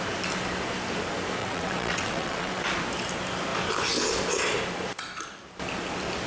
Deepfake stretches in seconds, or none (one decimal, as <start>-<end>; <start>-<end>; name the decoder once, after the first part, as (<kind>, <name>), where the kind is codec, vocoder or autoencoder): 1.4-2.6 (vocoder, WaveNeXt)